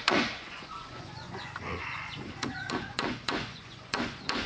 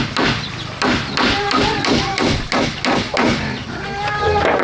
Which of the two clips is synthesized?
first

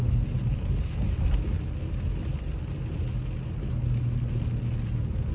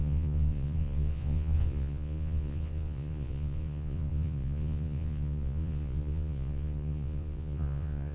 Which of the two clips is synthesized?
second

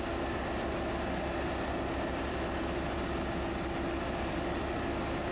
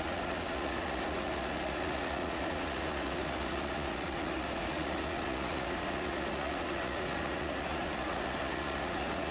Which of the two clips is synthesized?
second